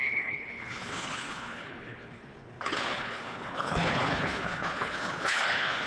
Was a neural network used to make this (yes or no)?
yes